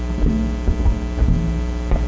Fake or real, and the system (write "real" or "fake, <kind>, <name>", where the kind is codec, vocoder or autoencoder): real